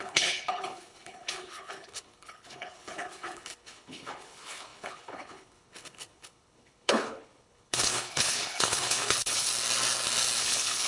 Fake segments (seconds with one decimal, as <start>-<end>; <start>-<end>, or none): 0.0-9.5; 10.4-10.9